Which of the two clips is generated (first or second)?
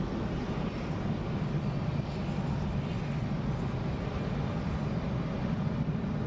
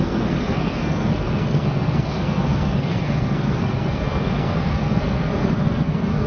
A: second